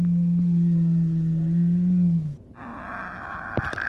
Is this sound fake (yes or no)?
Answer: no